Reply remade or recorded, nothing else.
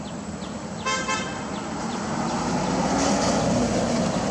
recorded